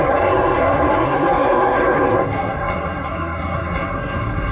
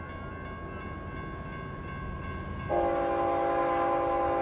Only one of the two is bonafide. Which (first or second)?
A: second